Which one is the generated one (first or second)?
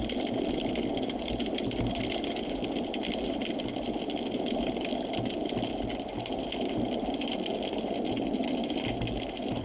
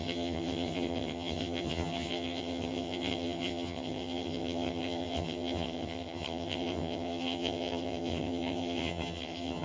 second